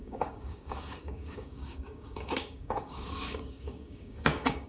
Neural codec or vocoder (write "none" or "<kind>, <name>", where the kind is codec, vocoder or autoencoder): codec, DAC